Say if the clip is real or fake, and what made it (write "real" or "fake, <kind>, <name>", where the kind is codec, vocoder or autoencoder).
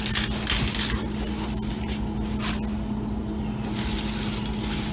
real